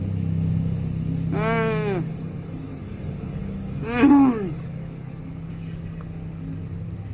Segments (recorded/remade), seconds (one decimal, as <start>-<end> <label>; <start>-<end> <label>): 0.0-2.1 recorded; 2.1-5.5 remade; 5.5-7.1 recorded